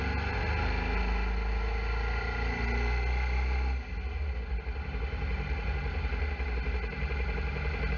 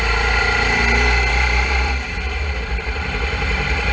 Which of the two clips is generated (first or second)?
second